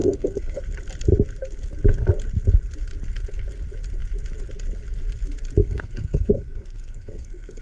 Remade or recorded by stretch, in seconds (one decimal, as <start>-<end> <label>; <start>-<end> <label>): 0.0-0.6 remade; 0.6-5.6 recorded; 5.6-7.6 remade